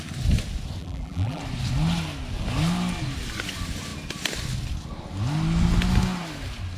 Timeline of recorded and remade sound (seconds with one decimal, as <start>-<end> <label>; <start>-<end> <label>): 0.0-0.8 recorded; 0.8-1.4 remade; 1.4-6.8 recorded